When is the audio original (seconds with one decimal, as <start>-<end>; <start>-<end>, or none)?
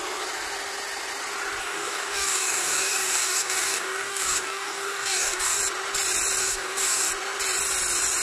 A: 0.0-1.6; 5.6-6.4; 7.1-8.2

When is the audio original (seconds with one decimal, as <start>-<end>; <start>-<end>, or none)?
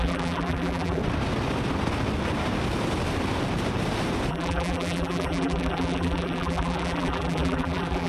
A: 1.0-4.3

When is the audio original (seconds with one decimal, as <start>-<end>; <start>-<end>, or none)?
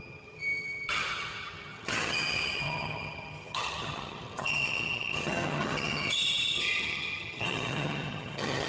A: none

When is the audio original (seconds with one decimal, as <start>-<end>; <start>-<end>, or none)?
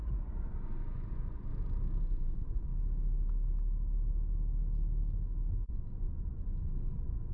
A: 1.5-2.0; 2.7-5.7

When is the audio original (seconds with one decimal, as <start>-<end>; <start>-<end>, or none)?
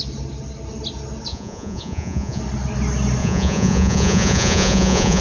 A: 0.0-1.3; 2.4-3.2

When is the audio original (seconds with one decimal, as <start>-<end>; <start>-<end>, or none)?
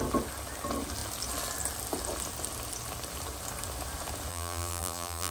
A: 0.0-4.3